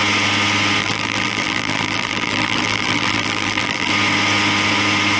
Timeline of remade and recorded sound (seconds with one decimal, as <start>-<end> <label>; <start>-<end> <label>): 0.0-0.8 recorded; 0.8-3.9 remade; 3.9-5.2 recorded